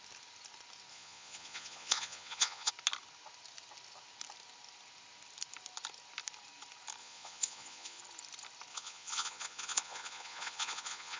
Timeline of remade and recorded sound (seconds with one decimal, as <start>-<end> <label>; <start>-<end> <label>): 0.0-0.9 recorded; 0.9-2.7 remade; 2.7-7.0 recorded; 7.0-8.0 remade; 8.0-8.7 recorded; 8.7-11.2 remade